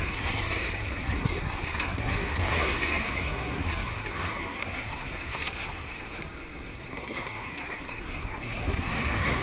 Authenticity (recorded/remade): remade